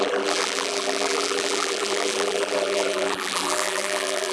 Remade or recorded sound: remade